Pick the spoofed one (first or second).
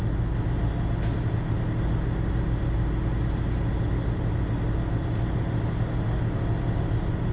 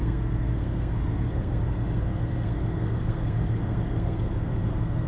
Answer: second